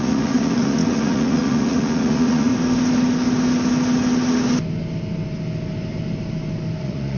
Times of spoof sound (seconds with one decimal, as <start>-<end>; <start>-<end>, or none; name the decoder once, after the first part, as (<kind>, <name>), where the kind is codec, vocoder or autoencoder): 0.0-2.5 (vocoder, Vocos); 6.8-7.2